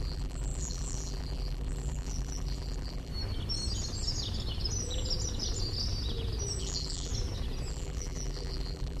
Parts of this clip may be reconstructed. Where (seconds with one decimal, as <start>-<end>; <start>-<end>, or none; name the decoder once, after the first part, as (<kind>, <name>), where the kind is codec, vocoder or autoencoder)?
0.0-3.1 (vocoder, BigVGAN v2); 6.6-7.1; 7.7-9.0